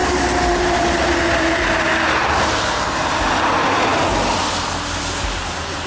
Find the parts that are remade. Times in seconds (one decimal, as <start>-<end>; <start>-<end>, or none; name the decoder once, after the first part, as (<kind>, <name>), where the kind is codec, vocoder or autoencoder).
0.0-3.5 (vocoder, BigVGAN v2)